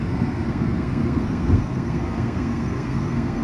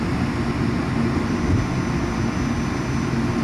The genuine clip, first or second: second